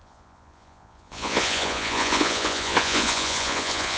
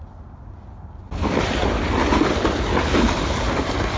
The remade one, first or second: first